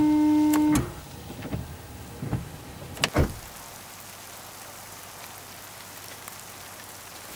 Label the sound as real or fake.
real